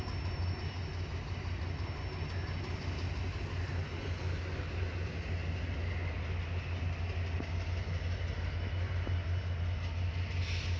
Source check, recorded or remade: recorded